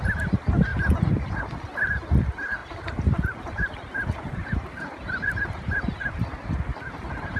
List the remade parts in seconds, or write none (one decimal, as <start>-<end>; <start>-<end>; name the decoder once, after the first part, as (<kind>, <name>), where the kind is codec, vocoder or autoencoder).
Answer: 2.6-6.5 (vocoder, BigVGAN v2)